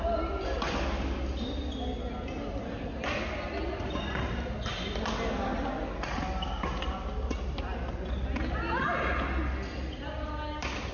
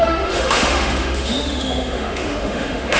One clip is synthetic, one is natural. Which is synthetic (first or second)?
second